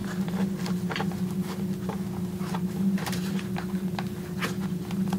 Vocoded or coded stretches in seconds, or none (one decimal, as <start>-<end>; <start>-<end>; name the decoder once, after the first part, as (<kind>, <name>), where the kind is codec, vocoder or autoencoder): none